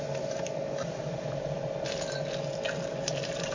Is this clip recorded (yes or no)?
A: no